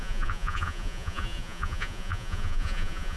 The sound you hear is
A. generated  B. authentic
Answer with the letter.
A